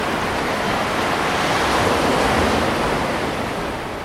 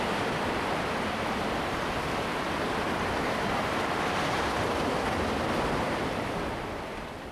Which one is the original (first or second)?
first